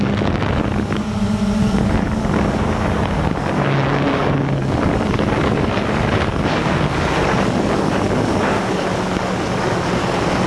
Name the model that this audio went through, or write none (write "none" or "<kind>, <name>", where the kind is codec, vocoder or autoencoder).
codec, DAC